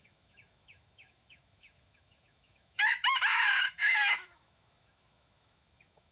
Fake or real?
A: fake